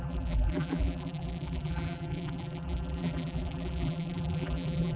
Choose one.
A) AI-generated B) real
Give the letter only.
A